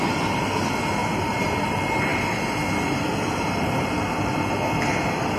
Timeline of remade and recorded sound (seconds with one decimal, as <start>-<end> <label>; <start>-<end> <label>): 0.0-5.4 recorded